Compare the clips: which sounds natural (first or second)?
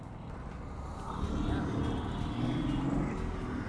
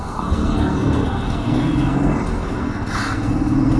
first